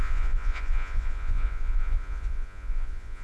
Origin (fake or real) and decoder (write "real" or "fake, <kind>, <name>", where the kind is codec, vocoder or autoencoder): fake, vocoder, Vocos